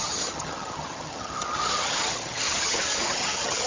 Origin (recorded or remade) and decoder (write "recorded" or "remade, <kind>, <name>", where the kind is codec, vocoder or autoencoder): remade, vocoder, HiFi-GAN